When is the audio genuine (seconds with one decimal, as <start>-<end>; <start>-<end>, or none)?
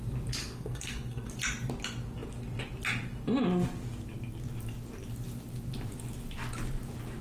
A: 0.0-0.4; 1.3-7.2